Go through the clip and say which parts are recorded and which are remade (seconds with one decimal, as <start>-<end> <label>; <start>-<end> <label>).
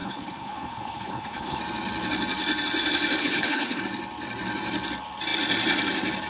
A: 0.0-1.6 remade; 1.6-3.2 recorded; 3.2-3.8 remade; 3.8-6.3 recorded